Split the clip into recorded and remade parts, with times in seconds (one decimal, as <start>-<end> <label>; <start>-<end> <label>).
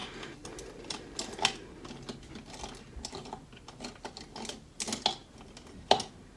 0.0-6.4 recorded